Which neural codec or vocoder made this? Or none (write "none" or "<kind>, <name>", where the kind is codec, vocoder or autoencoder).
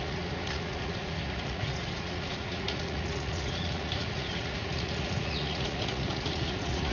vocoder, Vocos